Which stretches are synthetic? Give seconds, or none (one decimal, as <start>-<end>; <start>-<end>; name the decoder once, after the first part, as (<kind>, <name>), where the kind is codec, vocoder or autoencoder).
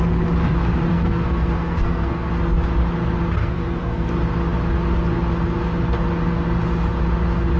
0.9-2.3 (codec, SNAC); 3.4-4.1